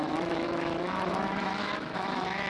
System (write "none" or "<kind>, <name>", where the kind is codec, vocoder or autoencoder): autoencoder, DAC-VAE